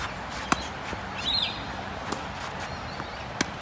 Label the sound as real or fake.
real